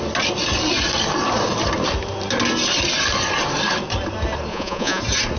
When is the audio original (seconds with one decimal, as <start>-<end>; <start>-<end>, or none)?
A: 0.0-4.5; 5.0-5.4